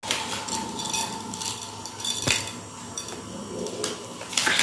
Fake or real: real